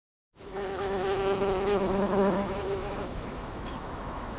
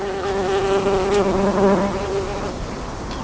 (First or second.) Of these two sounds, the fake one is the first